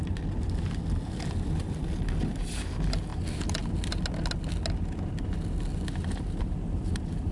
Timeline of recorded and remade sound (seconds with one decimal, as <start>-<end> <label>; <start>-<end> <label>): 0.0-6.1 recorded; 6.1-7.3 remade